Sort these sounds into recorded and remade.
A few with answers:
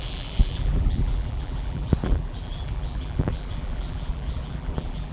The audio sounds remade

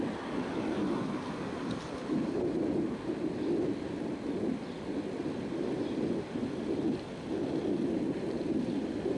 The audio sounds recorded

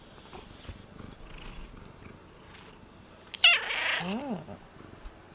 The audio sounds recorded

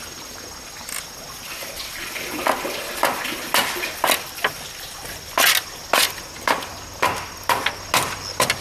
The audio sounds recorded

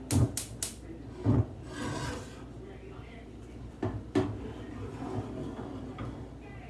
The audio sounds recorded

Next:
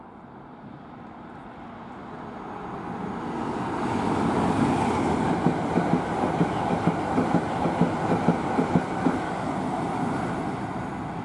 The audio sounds recorded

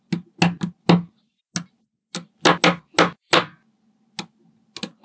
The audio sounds recorded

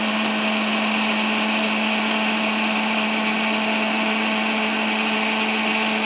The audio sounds recorded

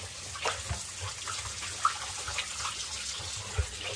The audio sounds recorded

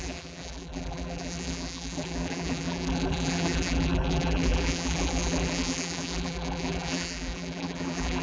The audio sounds remade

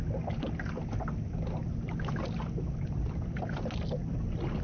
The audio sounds recorded